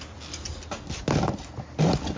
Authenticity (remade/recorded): recorded